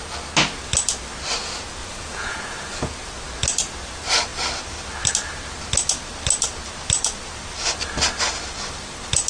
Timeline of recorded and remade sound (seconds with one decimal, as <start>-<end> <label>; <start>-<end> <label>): 0.0-1.8 recorded; 1.8-2.9 remade; 2.9-9.3 recorded